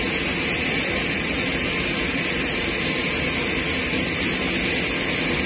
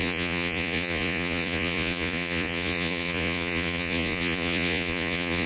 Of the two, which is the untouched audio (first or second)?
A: first